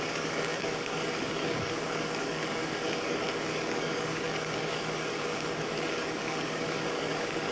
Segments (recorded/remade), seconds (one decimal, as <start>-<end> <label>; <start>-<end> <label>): 0.0-7.5 remade